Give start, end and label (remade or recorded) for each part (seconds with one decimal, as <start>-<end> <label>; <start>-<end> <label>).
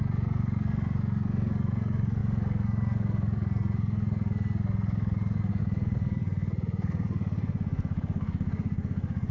0.0-9.3 remade